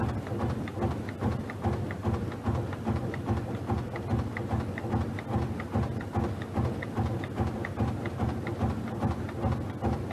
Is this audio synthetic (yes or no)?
no